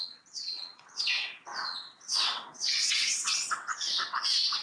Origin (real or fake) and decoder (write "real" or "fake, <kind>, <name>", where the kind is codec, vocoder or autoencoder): fake, vocoder, WaveNeXt